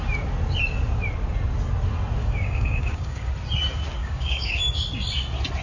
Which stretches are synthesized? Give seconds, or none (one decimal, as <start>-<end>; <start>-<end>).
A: 2.2-3.3; 4.0-4.6